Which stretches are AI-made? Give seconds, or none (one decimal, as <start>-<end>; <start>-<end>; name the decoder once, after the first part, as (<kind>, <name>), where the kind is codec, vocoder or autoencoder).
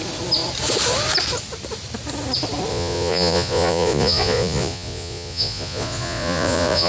2.7-6.9 (vocoder, Vocos)